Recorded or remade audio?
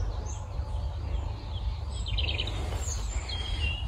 recorded